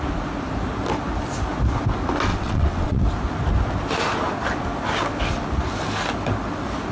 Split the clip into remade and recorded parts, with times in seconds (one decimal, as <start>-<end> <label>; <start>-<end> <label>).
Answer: 0.0-2.3 recorded; 2.3-3.0 remade; 3.0-6.9 recorded